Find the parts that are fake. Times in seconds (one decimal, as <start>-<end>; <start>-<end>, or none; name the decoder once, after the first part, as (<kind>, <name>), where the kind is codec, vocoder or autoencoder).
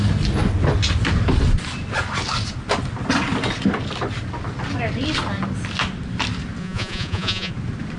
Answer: 6.6-7.5 (vocoder, Vocos)